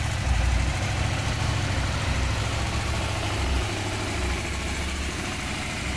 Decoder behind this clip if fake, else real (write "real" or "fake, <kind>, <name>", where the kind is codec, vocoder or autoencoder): fake, vocoder, BigVGAN v2